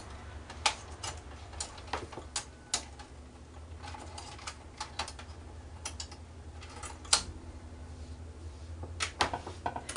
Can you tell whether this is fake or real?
real